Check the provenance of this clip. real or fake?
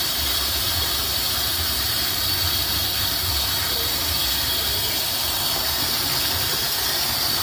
fake